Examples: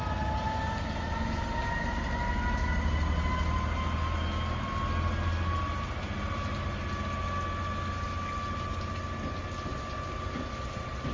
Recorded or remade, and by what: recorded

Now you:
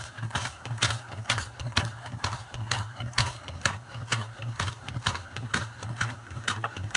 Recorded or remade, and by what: remade, codec, SNAC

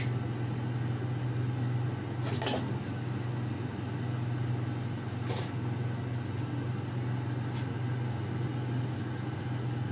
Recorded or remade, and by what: recorded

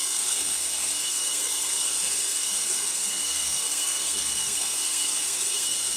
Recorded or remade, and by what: remade, codec, SNAC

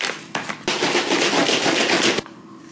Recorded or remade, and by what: recorded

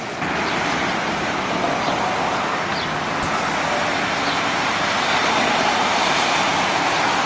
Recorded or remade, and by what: recorded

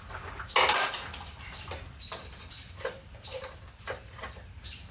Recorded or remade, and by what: recorded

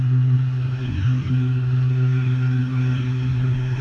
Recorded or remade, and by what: remade, codec, SNAC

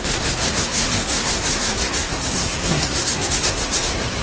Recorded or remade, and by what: remade, codec, SNAC